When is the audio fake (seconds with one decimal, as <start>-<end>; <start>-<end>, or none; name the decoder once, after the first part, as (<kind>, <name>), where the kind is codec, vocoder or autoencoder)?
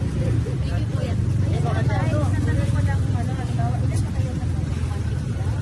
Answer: none